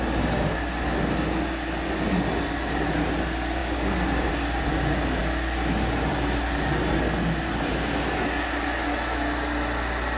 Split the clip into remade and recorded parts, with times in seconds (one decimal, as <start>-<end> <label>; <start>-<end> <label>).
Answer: 0.0-10.2 recorded